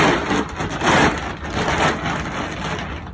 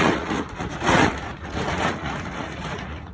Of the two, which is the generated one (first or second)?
second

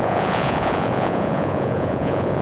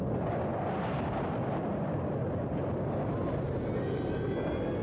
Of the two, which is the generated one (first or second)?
first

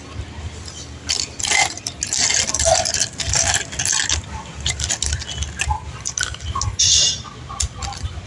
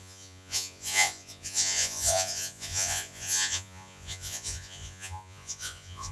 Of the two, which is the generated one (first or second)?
second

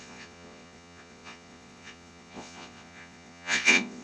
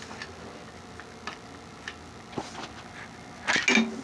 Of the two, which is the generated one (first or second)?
first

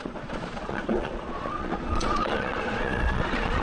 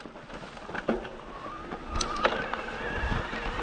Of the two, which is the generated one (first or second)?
first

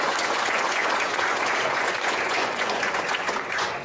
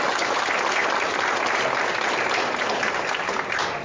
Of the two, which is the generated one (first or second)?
first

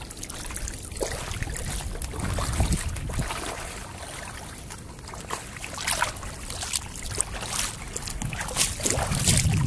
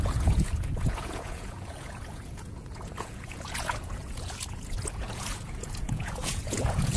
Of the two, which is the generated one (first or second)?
second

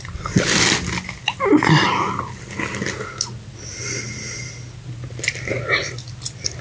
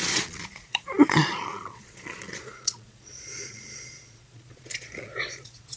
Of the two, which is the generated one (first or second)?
second